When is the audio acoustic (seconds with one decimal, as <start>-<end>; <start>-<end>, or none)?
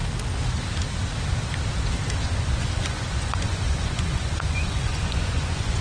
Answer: 0.0-2.2